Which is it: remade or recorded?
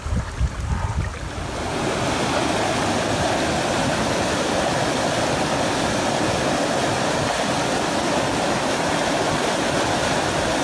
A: recorded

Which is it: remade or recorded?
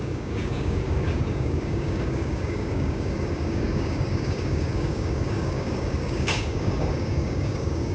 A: remade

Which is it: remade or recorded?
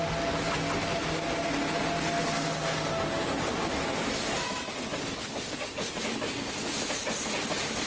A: recorded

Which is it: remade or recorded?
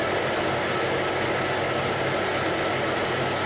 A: recorded